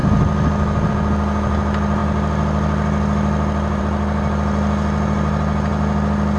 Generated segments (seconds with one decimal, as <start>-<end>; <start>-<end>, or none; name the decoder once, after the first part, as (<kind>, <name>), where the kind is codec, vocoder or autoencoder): none